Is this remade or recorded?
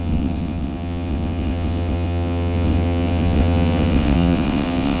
remade